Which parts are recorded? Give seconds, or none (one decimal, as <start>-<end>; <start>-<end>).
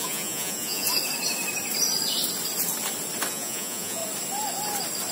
0.9-3.3; 4.0-5.1